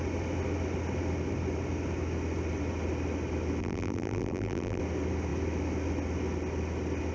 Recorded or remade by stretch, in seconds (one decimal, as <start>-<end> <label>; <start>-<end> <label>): 0.0-3.6 recorded; 3.6-4.8 remade; 4.8-7.1 recorded